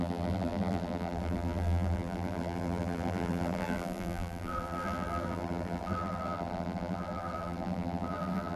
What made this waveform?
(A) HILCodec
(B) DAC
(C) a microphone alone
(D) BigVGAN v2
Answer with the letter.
D